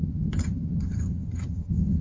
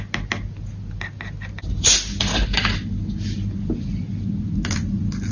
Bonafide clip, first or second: second